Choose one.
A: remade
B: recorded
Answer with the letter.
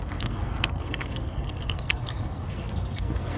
A